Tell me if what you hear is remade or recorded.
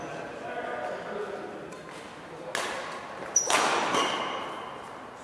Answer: recorded